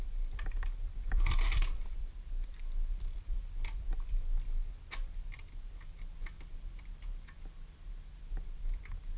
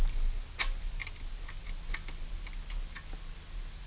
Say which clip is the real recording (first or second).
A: second